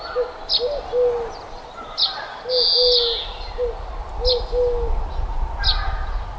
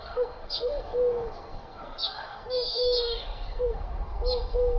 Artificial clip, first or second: second